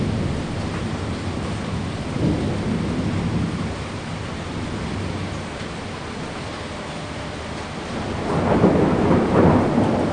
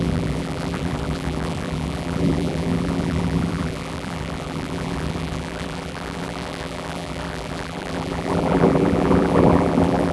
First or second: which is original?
first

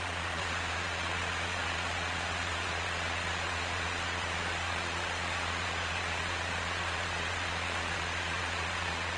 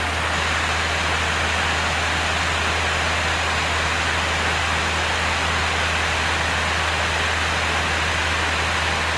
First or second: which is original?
second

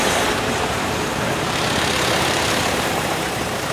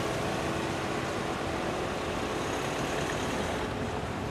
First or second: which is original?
second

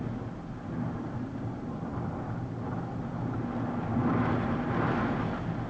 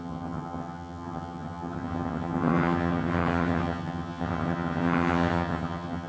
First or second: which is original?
first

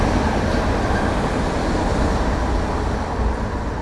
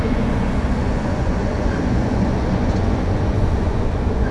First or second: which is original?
first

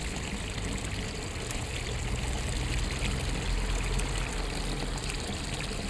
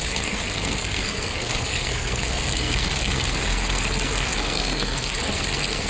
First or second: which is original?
first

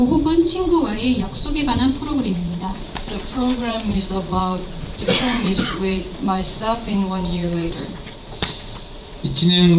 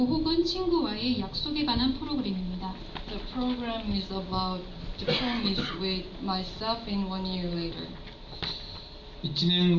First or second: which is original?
second